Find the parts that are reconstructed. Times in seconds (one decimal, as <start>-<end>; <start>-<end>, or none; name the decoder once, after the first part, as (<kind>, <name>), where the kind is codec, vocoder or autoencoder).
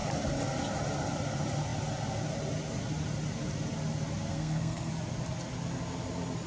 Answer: 4.3-4.9 (codec, SNAC)